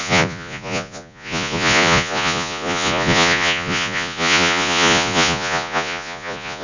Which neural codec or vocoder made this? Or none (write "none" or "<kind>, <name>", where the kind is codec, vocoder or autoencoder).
vocoder, Vocos